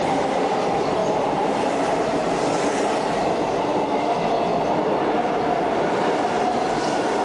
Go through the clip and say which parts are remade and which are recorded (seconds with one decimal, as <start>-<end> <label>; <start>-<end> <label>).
0.0-7.2 recorded